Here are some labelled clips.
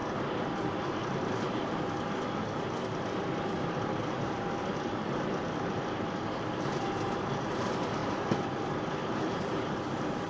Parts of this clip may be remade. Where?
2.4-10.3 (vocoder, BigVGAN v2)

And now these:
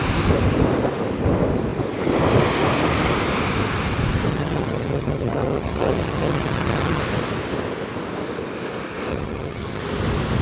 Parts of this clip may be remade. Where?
4.3-7.0 (vocoder, HiFi-GAN); 9.1-9.8

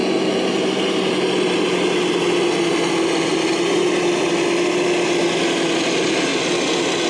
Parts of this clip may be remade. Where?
none